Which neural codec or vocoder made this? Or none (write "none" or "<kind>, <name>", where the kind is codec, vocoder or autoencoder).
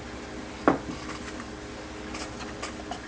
none